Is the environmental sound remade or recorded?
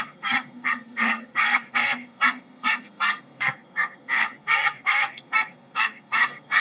remade